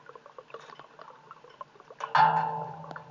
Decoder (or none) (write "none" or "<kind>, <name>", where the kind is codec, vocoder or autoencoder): none